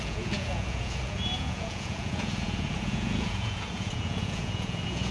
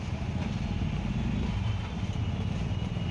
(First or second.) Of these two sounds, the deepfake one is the first